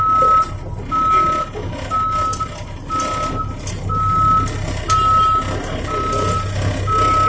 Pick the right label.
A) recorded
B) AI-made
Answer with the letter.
A